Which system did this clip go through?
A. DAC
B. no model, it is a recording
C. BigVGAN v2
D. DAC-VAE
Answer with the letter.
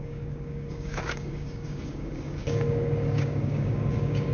A